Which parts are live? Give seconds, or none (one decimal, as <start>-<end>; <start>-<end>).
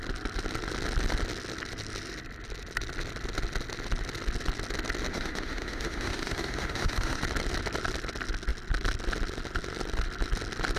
0.0-5.1; 7.2-10.8